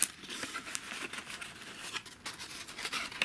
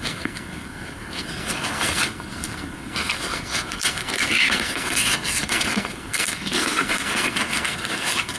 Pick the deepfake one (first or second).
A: second